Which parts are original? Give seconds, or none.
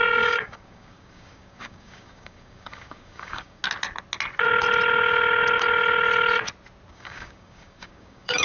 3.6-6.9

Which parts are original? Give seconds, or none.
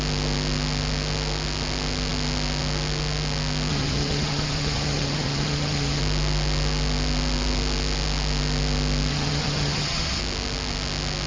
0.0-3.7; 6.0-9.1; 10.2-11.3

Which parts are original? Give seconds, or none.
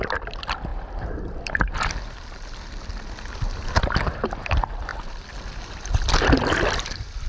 0.0-0.7; 1.8-4.9; 5.4-7.3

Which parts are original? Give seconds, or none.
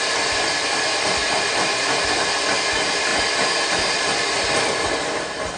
0.0-5.6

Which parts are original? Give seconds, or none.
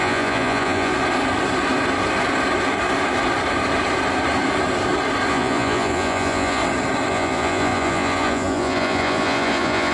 0.9-5.3; 6.6-7.1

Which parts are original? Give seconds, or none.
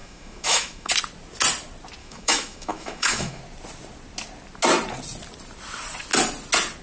0.9-2.0; 3.4-6.8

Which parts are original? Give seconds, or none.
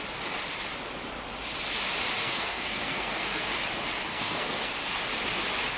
0.0-2.2; 3.5-4.1; 4.7-5.8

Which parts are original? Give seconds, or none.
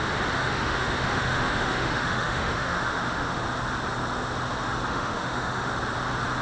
0.0-0.4; 3.4-4.9; 5.7-6.4